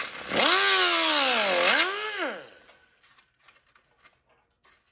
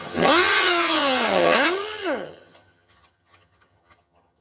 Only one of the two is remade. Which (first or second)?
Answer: second